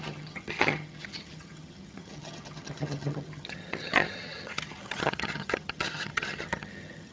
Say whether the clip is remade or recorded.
remade